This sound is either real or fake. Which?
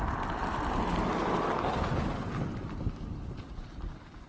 real